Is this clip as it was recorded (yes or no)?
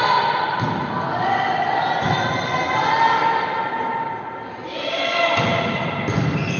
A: yes